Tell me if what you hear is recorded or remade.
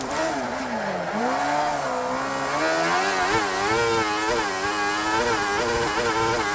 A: recorded